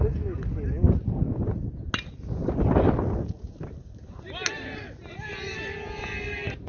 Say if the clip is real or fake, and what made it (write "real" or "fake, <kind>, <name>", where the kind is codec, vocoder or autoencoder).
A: real